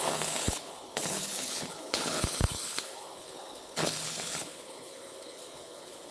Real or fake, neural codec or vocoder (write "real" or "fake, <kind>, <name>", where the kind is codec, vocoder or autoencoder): fake, codec, HILCodec